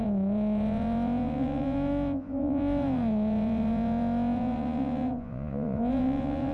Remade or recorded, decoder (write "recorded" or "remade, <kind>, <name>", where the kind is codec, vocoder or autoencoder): remade, vocoder, Vocos